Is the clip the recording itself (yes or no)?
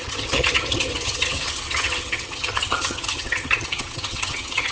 no